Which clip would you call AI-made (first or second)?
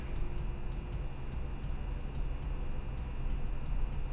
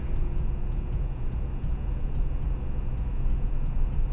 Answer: second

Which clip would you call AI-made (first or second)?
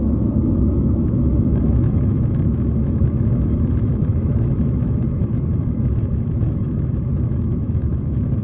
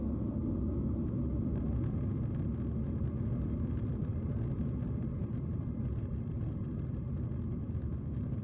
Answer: first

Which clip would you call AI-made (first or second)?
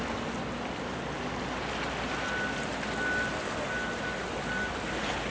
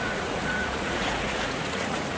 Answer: second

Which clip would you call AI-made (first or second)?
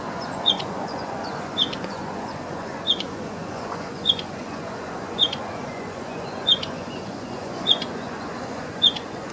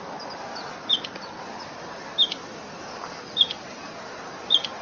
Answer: first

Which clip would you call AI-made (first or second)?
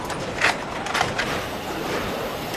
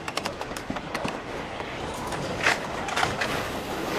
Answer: second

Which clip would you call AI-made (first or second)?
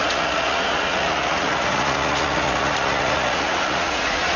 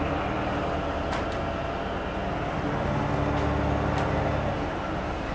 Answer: first